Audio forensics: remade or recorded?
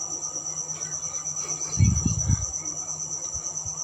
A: recorded